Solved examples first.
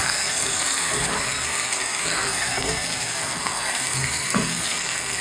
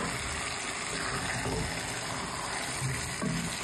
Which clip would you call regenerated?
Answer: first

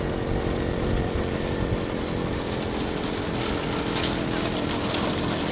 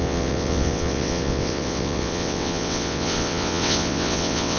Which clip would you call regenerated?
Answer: second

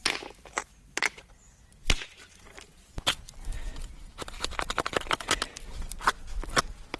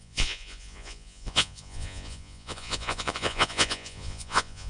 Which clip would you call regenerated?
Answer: second